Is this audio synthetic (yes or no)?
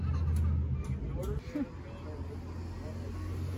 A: no